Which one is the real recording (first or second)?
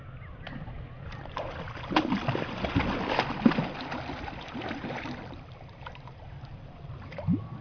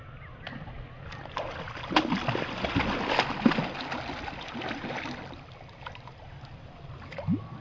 second